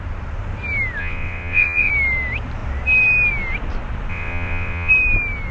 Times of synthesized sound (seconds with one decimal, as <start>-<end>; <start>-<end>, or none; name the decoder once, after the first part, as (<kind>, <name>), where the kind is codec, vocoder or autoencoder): 1.0-1.9 (vocoder, WaveNeXt); 4.1-4.9